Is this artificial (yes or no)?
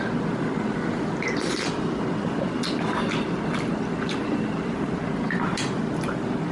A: no